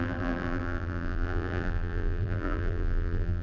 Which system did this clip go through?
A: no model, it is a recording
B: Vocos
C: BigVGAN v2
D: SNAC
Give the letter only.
C